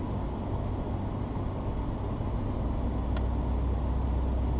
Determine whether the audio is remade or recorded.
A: recorded